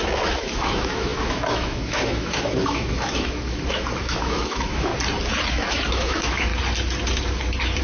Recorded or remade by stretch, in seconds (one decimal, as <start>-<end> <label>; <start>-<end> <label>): 0.0-4.9 remade; 4.9-5.5 recorded; 5.5-6.5 remade; 6.5-7.8 recorded